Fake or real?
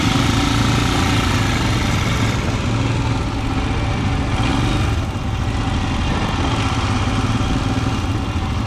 real